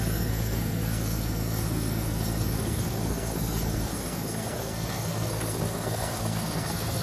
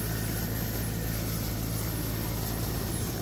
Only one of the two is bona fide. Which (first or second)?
second